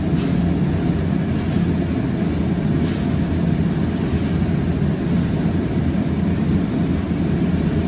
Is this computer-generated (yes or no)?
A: no